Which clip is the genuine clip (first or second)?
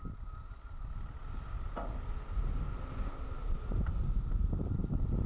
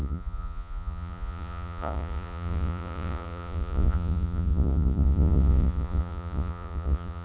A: first